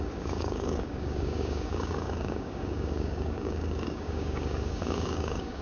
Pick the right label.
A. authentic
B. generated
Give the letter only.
B